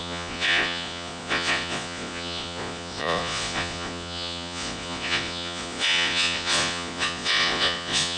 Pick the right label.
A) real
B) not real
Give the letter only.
B